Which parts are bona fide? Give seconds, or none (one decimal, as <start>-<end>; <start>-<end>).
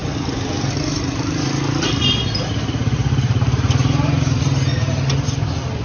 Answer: 0.0-5.8